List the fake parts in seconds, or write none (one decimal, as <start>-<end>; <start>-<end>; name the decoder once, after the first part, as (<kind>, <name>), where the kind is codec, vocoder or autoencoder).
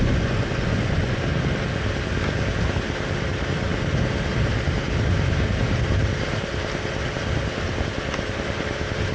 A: 0.0-1.2 (vocoder, Vocos)